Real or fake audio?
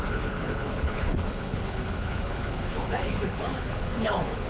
fake